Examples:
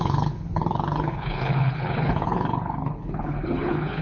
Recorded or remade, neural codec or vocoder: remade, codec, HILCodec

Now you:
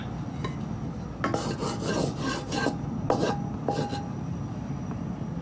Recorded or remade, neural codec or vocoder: recorded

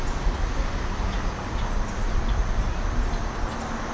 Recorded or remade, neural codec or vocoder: recorded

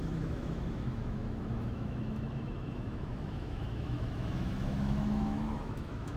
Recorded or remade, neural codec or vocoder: remade, autoencoder, DAC-VAE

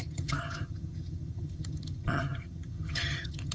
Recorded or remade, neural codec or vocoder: remade, vocoder, HiFi-GAN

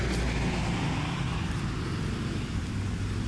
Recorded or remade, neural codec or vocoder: recorded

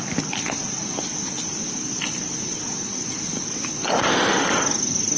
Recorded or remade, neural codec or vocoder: recorded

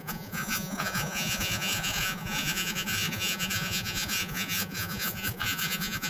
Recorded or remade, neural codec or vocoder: remade, vocoder, Vocos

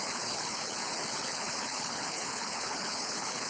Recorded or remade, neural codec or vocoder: remade, codec, HILCodec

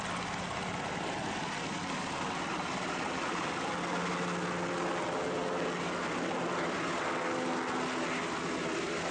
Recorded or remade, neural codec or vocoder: recorded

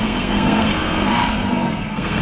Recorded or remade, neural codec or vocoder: remade, codec, SNAC